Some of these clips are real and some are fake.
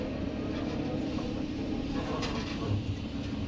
fake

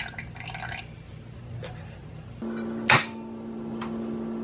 real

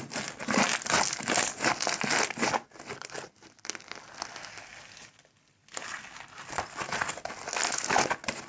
real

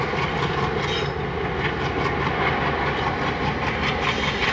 real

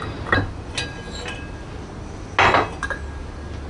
real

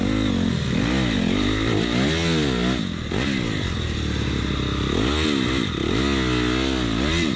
real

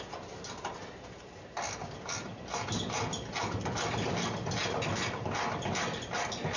real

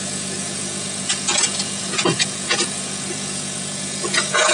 fake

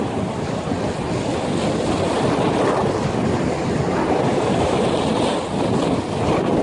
real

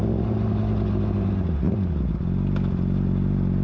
real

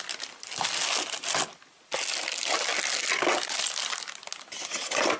real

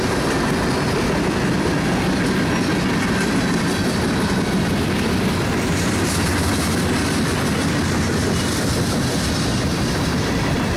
real